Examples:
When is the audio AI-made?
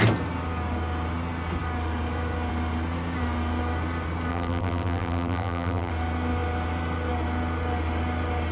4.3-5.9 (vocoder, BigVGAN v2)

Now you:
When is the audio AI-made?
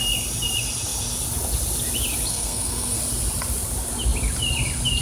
2.3-3.0 (codec, SNAC)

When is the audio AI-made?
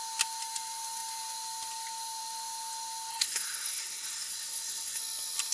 3.1-5.0 (codec, SNAC)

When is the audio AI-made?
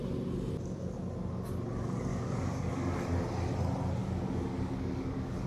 2.1-3.0 (codec, DAC); 4.0-5.5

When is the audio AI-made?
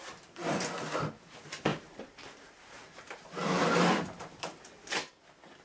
1.7-5.1 (vocoder, BigVGAN v2)